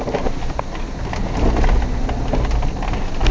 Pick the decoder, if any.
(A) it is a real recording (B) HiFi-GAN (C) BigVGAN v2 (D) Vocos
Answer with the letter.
A